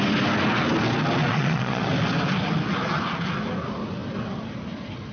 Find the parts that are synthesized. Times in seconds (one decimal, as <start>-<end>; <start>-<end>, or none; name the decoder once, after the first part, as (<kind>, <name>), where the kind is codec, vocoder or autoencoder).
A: 1.3-1.9 (vocoder, Vocos)